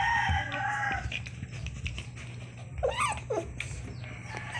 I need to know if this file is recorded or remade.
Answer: recorded